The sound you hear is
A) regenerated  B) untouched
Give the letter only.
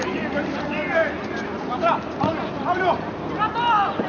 B